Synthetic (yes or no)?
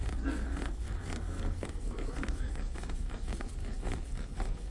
yes